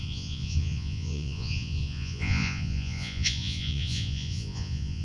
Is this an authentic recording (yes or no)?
no